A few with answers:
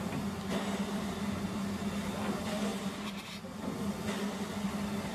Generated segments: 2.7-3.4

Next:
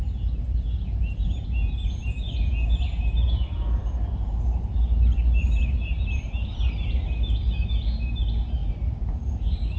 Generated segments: 0.0-9.8